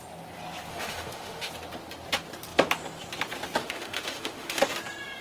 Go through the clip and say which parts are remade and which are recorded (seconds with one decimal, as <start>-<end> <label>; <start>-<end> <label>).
0.0-0.7 recorded; 0.7-1.5 remade; 1.5-3.6 recorded; 3.6-4.6 remade; 4.6-5.2 recorded